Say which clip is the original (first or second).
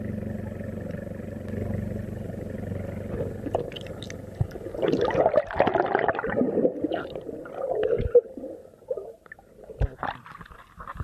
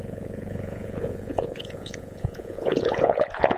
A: first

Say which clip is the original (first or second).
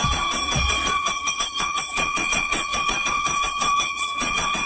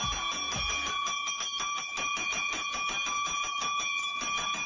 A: second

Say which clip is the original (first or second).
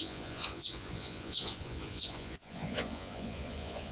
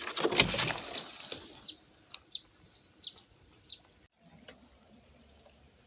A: second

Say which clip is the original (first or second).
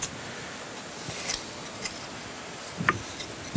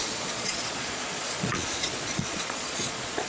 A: first